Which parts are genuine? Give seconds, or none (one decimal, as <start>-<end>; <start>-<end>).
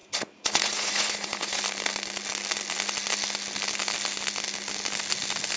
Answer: 1.6-5.6